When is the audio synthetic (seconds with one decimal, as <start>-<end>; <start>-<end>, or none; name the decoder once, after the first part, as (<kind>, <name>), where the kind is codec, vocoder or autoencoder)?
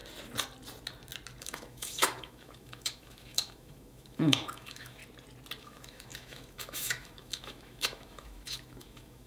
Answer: 1.4-5.0 (autoencoder, DAC-VAE); 5.6-9.3